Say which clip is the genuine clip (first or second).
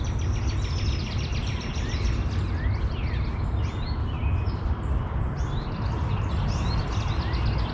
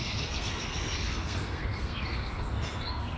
first